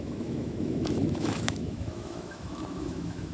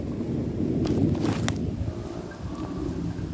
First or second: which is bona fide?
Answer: second